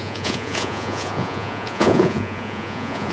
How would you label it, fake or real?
fake